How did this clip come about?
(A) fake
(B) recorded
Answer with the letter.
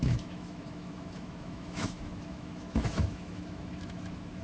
A